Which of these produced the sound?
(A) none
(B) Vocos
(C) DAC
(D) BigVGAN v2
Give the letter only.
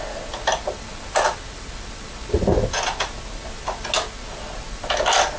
A